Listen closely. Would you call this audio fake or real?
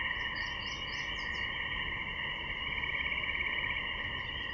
real